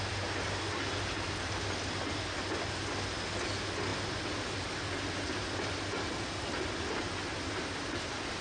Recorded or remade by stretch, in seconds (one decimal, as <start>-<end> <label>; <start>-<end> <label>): 0.0-8.4 recorded